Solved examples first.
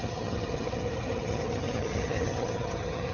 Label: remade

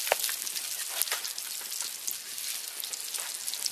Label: recorded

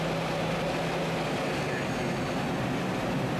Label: recorded